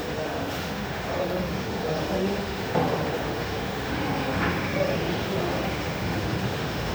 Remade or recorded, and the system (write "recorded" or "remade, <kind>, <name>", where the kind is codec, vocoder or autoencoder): remade, autoencoder, DAC-VAE